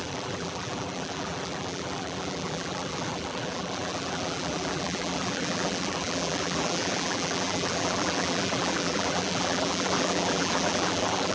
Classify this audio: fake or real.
fake